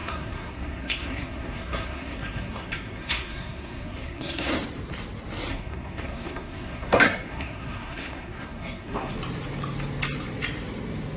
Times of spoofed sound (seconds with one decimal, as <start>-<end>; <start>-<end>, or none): 0.0-4.5; 5.5-9.1